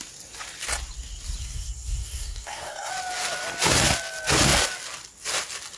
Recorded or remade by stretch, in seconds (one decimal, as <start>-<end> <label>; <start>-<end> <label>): 0.0-1.4 recorded; 1.4-2.9 remade; 2.9-5.8 recorded